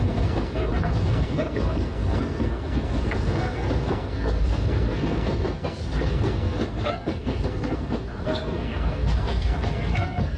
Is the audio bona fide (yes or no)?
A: no